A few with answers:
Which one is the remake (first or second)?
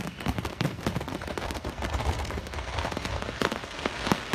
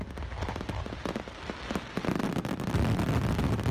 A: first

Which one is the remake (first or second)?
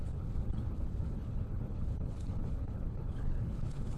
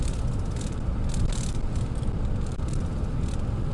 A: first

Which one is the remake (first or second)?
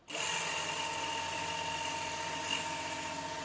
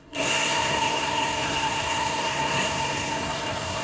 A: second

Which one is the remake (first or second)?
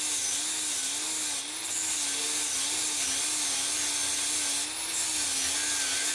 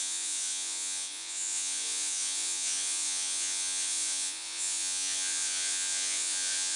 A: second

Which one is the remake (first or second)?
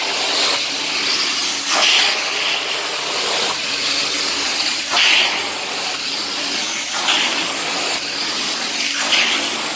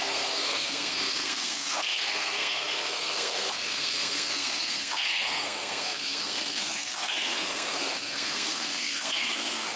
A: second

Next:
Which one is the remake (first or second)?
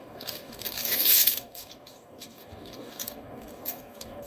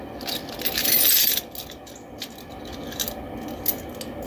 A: first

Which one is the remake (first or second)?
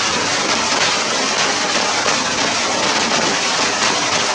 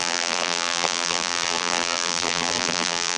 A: second